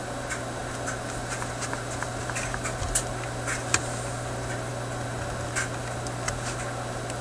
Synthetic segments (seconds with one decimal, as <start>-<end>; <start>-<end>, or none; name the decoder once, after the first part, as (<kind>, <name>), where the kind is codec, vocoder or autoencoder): none